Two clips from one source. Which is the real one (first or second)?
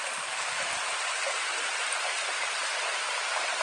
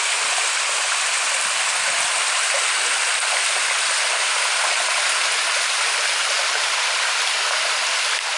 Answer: first